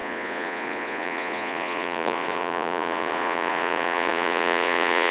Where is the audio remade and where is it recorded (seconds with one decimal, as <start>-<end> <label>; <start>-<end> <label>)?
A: 0.0-5.1 remade